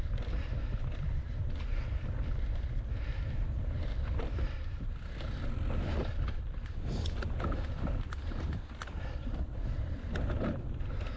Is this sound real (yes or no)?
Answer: no